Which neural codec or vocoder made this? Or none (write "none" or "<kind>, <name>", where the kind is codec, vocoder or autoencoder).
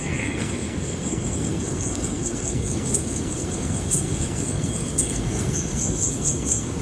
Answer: codec, SNAC